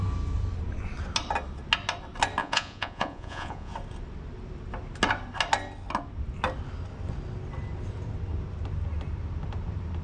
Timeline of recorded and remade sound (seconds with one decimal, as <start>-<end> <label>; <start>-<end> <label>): 0.0-2.4 recorded; 2.4-3.7 remade; 3.7-10.0 recorded